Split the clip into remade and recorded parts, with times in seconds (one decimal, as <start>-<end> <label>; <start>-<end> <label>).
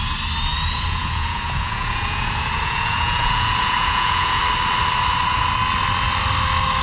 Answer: 0.0-0.5 recorded; 0.5-4.4 remade; 4.4-6.8 recorded